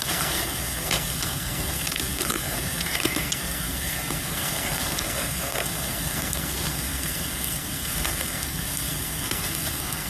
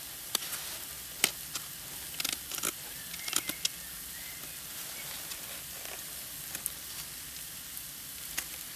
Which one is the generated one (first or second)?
first